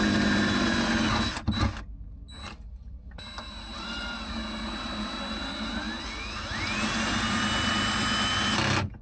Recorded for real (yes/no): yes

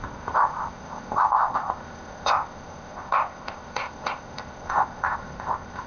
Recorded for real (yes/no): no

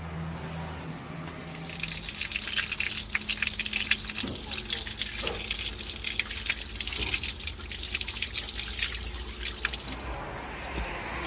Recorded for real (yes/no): yes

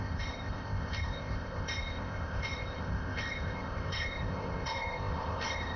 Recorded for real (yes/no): no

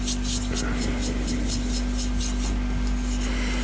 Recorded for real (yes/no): yes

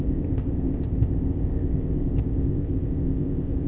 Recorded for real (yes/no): no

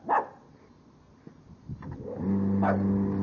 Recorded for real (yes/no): yes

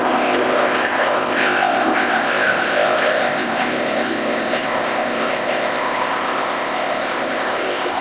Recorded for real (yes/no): no